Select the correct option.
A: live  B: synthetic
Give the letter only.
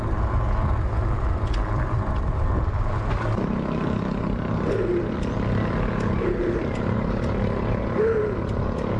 A